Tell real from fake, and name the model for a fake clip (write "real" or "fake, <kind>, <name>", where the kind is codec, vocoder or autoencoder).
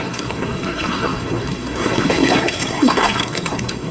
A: fake, codec, SNAC